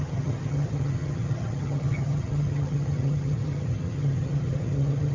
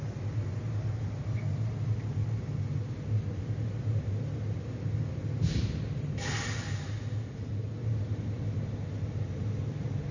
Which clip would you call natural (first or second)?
second